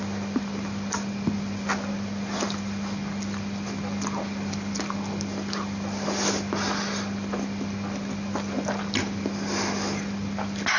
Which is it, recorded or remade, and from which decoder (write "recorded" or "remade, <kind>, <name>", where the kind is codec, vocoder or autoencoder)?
recorded